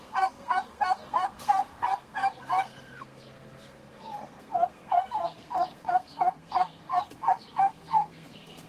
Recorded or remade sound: remade